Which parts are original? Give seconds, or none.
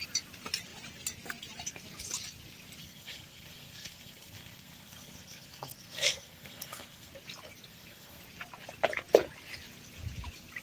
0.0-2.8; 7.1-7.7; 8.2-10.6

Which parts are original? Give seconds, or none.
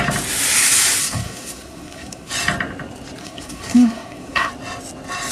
0.0-1.0; 2.3-3.2; 4.5-5.3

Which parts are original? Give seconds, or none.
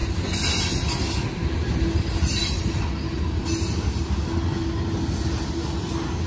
0.0-6.3